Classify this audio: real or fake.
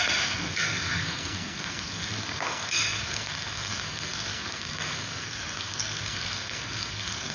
fake